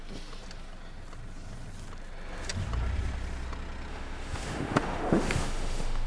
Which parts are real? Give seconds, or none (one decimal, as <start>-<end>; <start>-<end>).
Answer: 0.0-3.9